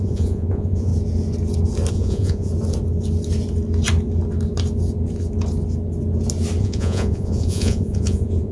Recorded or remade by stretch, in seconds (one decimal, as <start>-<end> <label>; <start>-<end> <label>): 0.0-0.9 remade; 0.9-1.9 recorded; 1.9-2.5 remade; 2.5-6.6 recorded; 6.6-8.5 remade